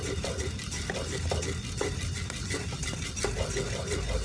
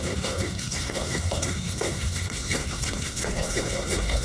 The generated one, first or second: second